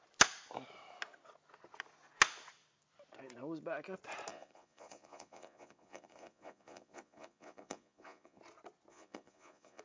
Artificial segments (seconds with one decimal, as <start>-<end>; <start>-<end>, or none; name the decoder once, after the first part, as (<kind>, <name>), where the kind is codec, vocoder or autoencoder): 4.3-8.4 (vocoder, Vocos); 8.9-9.8